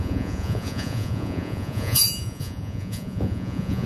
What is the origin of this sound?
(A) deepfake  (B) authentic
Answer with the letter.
A